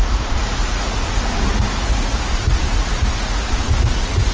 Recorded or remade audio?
remade